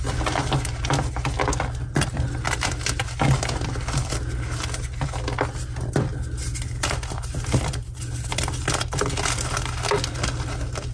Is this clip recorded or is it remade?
recorded